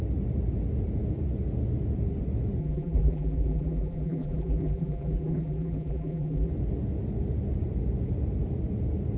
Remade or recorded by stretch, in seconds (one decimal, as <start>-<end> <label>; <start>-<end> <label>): 0.0-2.6 recorded; 2.6-6.5 remade; 6.5-9.2 recorded